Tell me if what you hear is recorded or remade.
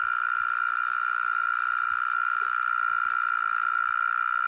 recorded